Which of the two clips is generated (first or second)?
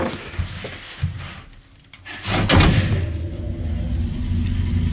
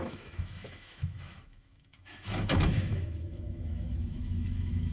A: second